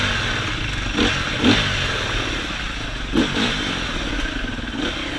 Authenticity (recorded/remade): recorded